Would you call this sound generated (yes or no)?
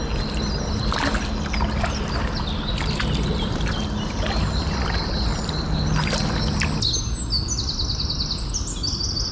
no